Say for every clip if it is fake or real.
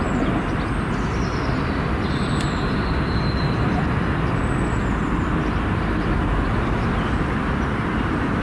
real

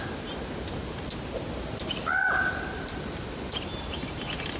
real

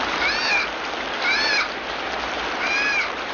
real